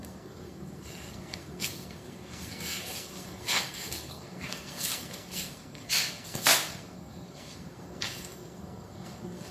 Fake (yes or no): yes